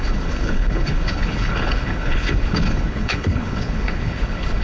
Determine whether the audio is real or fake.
fake